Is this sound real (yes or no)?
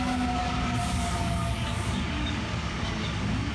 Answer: no